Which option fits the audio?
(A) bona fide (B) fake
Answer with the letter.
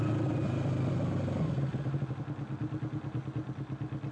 A